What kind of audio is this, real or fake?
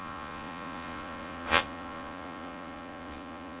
fake